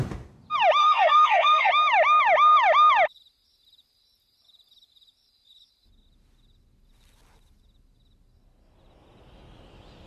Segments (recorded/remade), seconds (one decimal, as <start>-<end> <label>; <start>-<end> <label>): 0.0-0.8 recorded; 0.8-1.7 remade; 1.7-10.1 recorded